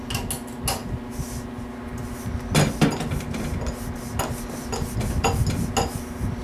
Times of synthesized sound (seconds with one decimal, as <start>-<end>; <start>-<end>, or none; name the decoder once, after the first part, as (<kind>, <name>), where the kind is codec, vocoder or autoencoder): none